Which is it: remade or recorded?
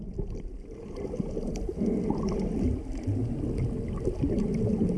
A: recorded